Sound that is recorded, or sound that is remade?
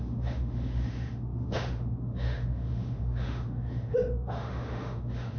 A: remade